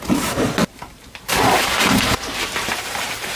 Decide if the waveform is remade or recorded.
remade